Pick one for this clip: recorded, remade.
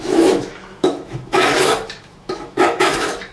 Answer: remade